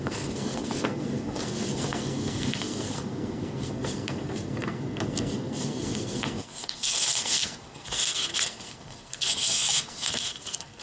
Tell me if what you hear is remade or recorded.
remade